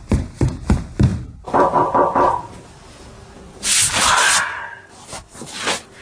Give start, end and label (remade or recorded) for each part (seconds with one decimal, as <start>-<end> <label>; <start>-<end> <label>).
0.0-6.0 recorded